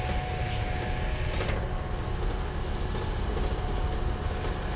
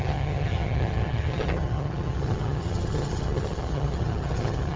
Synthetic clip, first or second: second